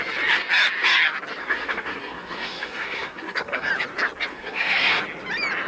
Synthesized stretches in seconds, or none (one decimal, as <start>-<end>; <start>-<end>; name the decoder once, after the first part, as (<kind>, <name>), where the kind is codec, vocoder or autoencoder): 1.4-3.7 (codec, SNAC); 4.3-5.0